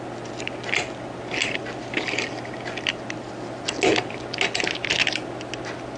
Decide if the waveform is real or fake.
real